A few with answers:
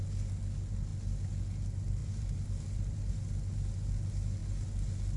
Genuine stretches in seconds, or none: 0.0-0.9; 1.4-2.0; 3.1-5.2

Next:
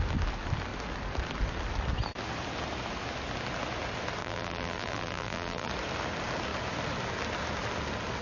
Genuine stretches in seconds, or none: 0.0-4.2; 5.7-8.2

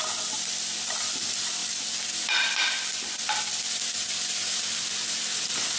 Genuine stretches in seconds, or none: 1.6-4.1

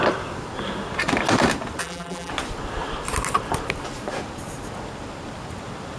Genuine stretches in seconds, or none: 0.0-1.8; 2.3-6.0

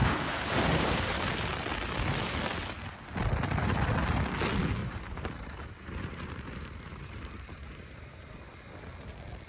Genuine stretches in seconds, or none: 1.3-4.8; 8.4-9.5

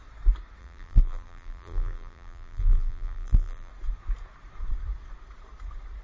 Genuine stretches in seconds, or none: 0.0-0.6; 3.7-6.0

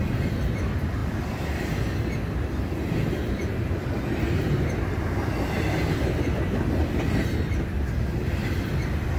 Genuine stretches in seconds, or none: 0.0-9.2

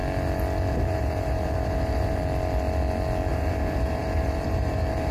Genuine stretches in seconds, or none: 0.0-0.7; 2.2-3.3